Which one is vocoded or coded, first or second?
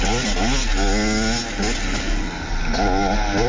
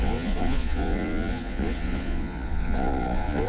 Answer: second